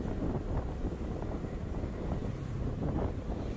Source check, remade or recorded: recorded